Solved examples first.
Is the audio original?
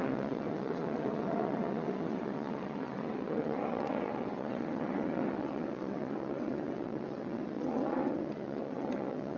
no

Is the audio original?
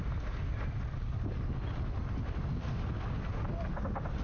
yes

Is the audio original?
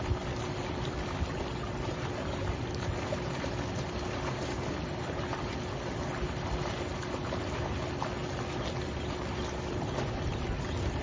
yes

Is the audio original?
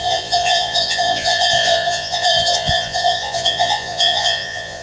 no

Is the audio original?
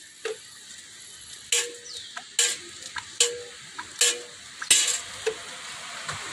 yes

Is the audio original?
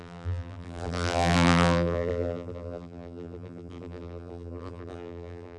no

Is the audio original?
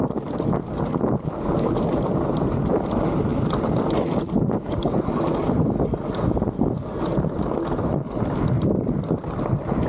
yes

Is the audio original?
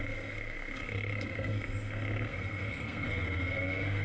no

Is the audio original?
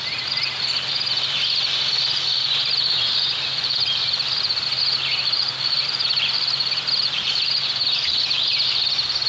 no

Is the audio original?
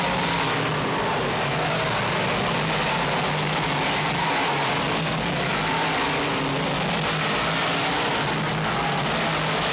yes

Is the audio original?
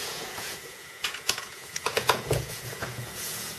no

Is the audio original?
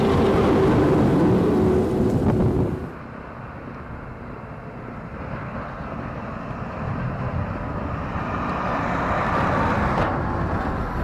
yes